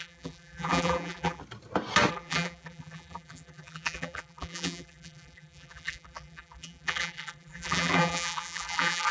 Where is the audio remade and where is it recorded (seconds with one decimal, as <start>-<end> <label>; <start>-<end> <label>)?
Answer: 0.0-1.4 remade; 1.4-2.1 recorded; 2.1-9.1 remade